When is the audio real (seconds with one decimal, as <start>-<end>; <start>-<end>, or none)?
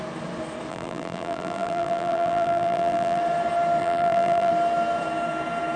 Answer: 0.0-0.7; 3.2-3.8; 4.5-5.8